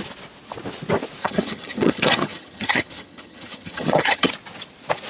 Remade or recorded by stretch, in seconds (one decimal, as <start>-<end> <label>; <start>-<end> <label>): 0.0-1.2 recorded; 1.2-4.3 remade; 4.3-5.1 recorded